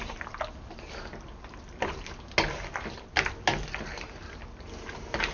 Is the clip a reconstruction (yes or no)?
no